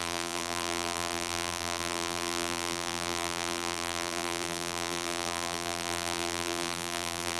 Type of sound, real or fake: fake